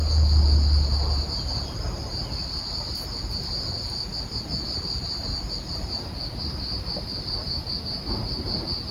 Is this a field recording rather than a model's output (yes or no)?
yes